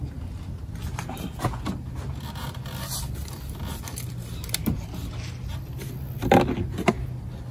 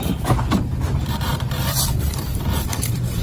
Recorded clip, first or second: first